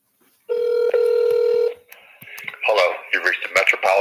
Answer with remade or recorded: recorded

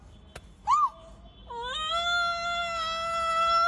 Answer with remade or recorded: recorded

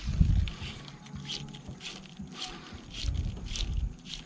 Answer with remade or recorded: recorded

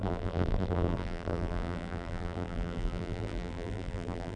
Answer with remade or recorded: remade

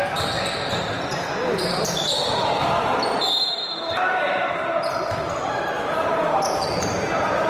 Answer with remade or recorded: remade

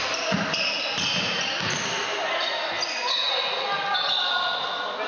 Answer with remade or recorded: recorded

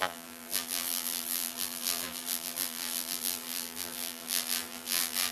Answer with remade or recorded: remade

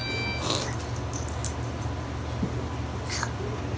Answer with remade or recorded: recorded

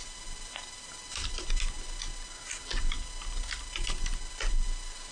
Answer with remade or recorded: recorded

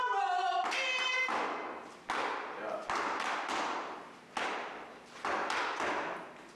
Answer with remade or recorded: recorded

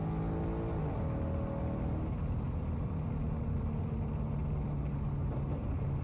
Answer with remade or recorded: recorded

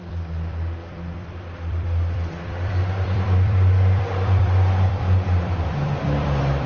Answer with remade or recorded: remade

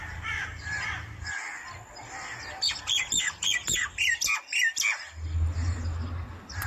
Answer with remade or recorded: recorded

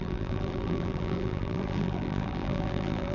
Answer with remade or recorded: remade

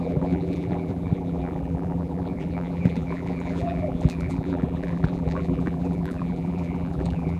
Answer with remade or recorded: remade